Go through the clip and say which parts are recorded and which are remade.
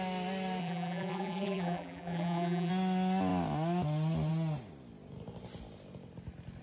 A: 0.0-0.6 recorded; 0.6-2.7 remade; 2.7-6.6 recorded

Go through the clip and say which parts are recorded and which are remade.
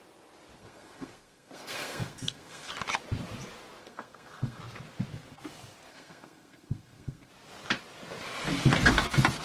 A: 0.0-0.6 recorded; 0.6-2.7 remade; 2.7-3.8 recorded; 3.8-4.6 remade; 4.6-5.9 recorded; 5.9-7.3 remade; 7.3-9.4 recorded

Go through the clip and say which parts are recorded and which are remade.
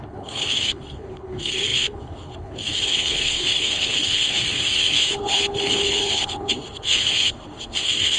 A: 0.0-8.2 remade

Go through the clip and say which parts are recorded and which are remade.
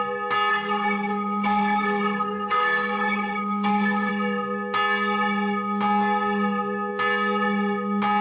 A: 0.0-0.5 recorded; 0.5-4.1 remade; 4.1-8.2 recorded